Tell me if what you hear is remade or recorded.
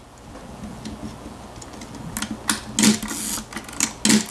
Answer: recorded